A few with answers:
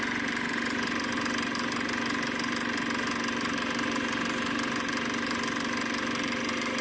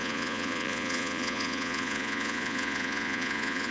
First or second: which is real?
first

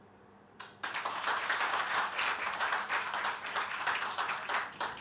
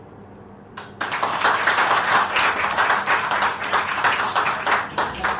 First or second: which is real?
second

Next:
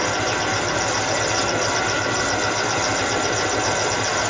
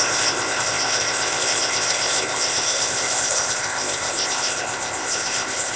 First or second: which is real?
first